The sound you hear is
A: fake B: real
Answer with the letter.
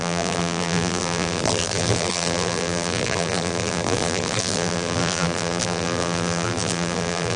A